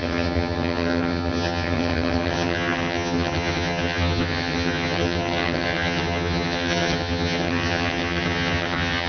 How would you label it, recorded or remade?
remade